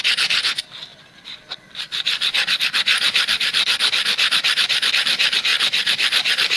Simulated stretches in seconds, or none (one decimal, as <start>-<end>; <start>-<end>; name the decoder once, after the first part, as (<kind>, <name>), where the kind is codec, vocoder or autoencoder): none